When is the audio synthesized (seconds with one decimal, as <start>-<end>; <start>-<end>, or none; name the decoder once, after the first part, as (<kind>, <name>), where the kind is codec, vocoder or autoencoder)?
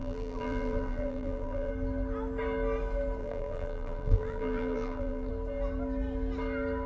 0.0-1.7 (vocoder, BigVGAN v2); 3.2-5.3